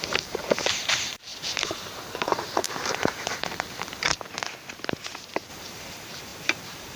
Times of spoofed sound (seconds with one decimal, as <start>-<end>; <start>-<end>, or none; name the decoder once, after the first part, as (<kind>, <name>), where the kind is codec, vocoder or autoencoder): 0.0-4.1 (vocoder, BigVGAN v2); 5.5-7.0